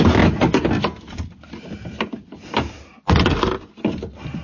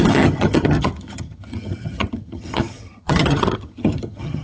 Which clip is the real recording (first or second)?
first